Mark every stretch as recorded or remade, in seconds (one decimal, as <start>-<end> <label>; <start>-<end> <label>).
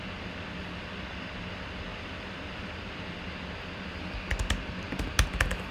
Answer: 0.0-1.9 recorded; 1.9-2.8 remade; 2.8-5.7 recorded